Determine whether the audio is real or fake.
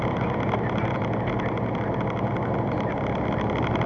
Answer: real